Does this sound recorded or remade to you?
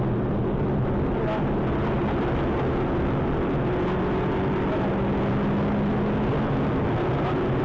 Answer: recorded